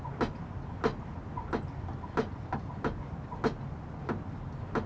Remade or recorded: recorded